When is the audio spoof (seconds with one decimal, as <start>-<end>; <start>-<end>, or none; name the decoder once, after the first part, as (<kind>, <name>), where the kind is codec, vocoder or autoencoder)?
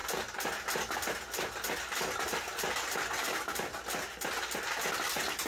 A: none